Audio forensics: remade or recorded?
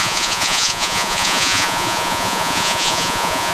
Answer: remade